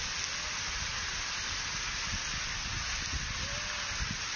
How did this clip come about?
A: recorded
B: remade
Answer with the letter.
A